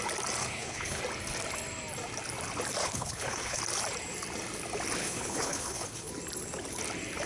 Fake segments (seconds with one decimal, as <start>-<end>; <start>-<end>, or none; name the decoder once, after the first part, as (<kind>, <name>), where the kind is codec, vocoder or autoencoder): 0.4-1.0 (codec, HILCodec); 2.8-3.6; 5.0-6.1